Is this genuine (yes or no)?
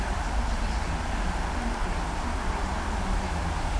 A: yes